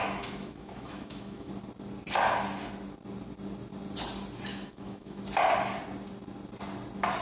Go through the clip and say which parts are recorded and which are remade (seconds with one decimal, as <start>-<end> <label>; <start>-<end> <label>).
0.0-1.5 remade; 1.5-4.5 recorded; 4.5-5.2 remade; 5.2-7.2 recorded